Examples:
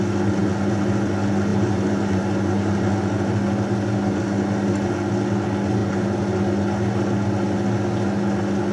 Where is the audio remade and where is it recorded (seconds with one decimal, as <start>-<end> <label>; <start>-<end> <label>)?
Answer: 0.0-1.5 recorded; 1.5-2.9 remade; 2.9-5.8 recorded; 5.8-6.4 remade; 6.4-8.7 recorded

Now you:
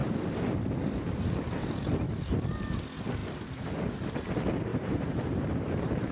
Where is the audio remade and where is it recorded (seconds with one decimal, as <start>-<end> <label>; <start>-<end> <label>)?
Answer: 0.0-4.7 recorded; 4.7-6.1 remade

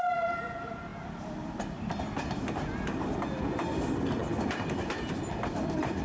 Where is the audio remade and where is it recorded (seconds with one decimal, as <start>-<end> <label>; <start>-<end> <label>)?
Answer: 0.0-6.0 remade

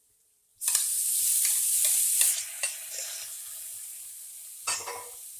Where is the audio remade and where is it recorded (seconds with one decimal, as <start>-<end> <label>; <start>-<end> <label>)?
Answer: 0.0-0.5 recorded; 0.5-2.9 remade; 2.9-3.7 recorded; 3.7-4.3 remade; 4.3-5.4 recorded

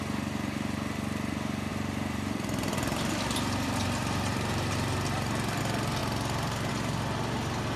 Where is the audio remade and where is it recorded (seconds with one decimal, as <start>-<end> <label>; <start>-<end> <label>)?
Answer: 0.0-1.7 recorded; 1.7-5.6 remade; 5.6-7.8 recorded

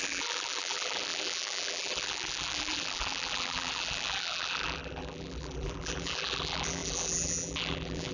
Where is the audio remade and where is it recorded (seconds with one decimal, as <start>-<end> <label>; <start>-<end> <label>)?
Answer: 0.0-8.1 remade

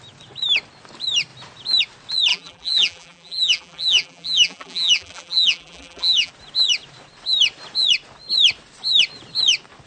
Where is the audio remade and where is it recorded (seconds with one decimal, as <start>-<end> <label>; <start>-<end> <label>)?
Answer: 0.0-2.3 recorded; 2.3-6.3 remade; 6.3-9.9 recorded

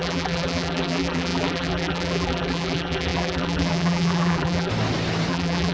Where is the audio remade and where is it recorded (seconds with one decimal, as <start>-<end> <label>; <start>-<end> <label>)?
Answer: 0.0-4.7 remade; 4.7-5.3 recorded; 5.3-5.7 remade